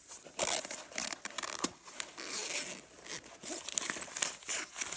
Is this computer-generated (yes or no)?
no